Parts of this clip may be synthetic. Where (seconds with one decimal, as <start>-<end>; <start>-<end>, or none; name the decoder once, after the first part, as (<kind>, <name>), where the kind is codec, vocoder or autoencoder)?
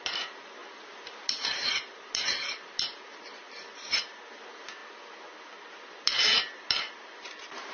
0.0-4.8 (vocoder, BigVGAN v2); 5.7-7.7